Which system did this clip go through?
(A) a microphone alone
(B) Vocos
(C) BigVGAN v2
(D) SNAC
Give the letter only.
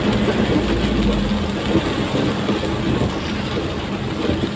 A